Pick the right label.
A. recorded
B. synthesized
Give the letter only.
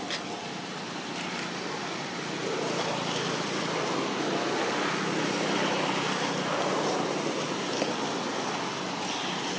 A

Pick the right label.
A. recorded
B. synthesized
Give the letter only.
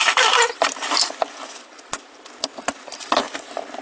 A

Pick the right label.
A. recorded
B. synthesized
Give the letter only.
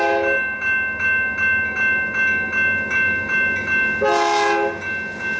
A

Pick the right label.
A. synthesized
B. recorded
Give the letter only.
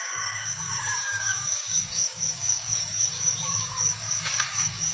A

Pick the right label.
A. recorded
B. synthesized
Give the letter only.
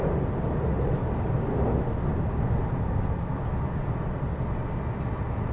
A